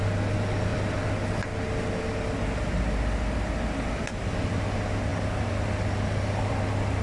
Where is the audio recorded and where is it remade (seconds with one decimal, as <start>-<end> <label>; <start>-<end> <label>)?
0.0-7.0 recorded

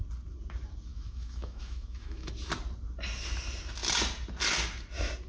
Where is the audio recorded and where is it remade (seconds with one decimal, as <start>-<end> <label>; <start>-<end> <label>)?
0.0-0.9 recorded; 0.9-2.3 remade; 2.3-5.3 recorded